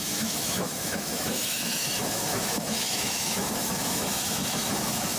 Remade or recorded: remade